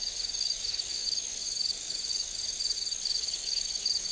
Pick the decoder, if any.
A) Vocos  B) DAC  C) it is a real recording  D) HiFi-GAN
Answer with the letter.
B